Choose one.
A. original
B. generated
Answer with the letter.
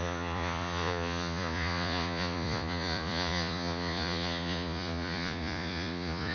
B